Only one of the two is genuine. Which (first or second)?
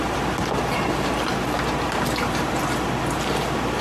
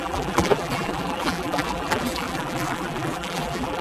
first